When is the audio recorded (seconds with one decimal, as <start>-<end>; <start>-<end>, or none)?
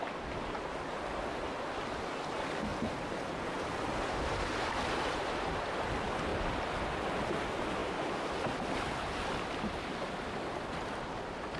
0.0-2.7; 4.7-11.6